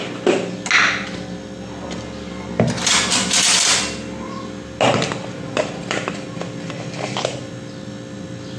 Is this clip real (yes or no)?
yes